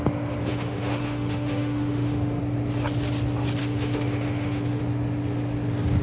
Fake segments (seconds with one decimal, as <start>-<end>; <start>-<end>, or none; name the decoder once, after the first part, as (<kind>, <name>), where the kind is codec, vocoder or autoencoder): 0.5-2.4 (autoencoder, DAC-VAE); 3.6-4.8